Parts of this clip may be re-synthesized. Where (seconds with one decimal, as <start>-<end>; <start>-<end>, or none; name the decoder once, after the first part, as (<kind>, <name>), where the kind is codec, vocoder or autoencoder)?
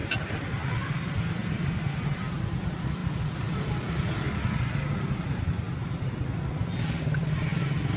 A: none